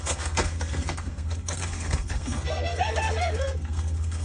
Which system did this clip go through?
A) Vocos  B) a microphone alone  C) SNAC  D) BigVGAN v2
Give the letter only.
C